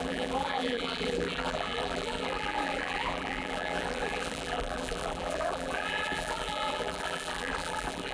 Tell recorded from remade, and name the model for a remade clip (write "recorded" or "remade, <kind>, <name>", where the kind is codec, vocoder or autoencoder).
remade, vocoder, BigVGAN v2